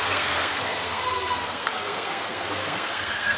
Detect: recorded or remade remade